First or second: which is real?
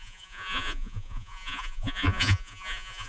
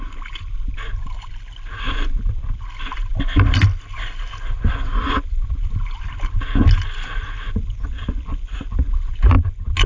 second